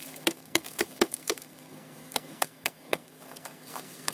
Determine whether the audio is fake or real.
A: fake